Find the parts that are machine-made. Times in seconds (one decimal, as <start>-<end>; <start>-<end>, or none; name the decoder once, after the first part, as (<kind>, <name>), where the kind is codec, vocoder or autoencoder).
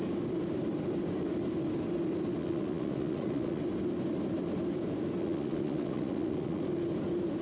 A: 2.4-3.6 (vocoder, Vocos); 5.2-6.6